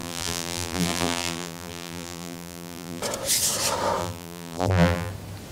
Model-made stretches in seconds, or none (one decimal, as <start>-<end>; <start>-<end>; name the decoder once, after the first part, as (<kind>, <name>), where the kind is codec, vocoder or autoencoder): 0.0-3.0 (vocoder, BigVGAN v2); 4.0-5.1

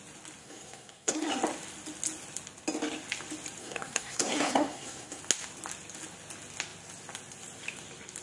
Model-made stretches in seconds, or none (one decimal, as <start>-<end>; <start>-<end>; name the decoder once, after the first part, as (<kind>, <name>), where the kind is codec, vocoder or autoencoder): 0.4-1.3 (codec, SNAC); 3.6-5.2